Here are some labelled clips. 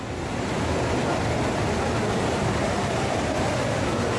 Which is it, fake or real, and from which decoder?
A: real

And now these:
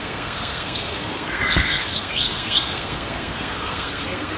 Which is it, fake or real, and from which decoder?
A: fake, codec, SNAC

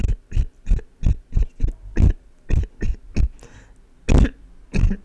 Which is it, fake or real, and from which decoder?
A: real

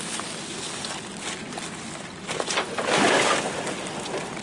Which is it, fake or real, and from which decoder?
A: real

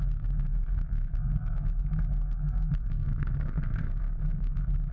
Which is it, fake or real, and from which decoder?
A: fake, codec, SNAC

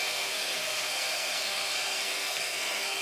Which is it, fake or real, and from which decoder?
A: fake, codec, SNAC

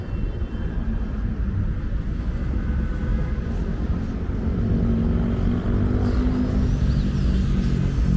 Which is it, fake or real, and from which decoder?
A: real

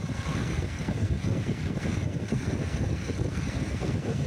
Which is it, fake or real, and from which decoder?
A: fake, codec, SNAC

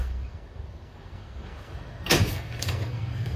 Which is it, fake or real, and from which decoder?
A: fake, codec, SNAC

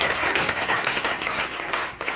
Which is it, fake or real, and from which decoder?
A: fake, codec, SNAC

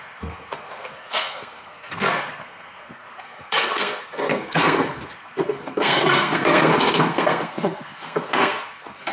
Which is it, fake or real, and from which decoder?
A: fake, codec, SNAC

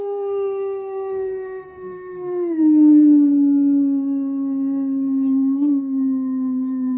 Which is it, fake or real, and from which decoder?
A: fake, codec, SNAC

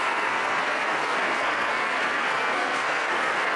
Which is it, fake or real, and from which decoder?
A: fake, codec, SNAC